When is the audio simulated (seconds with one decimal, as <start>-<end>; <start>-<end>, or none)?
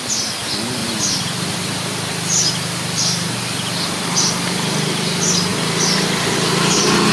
0.8-4.3